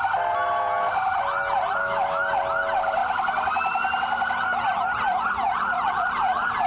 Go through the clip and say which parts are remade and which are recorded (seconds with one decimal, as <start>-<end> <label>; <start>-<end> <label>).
0.0-1.8 recorded; 1.8-2.3 remade; 2.3-6.7 recorded